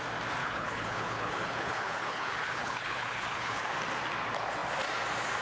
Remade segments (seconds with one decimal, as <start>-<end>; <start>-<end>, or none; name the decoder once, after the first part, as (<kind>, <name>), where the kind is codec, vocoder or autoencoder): 0.4-3.6 (codec, HILCodec)

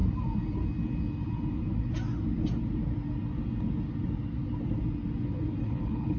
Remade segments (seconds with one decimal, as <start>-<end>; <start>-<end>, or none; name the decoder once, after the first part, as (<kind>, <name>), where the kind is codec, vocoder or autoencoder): 5.6-6.2 (codec, HILCodec)